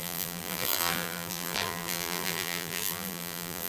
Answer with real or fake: fake